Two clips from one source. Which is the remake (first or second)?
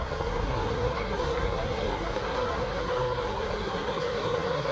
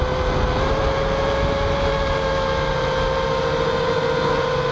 first